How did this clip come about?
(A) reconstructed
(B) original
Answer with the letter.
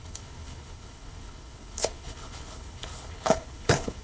A